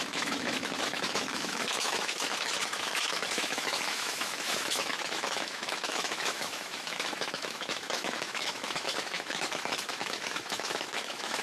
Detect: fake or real fake